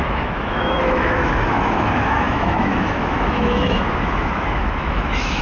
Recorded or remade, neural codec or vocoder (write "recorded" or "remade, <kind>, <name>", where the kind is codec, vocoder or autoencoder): remade, autoencoder, DAC-VAE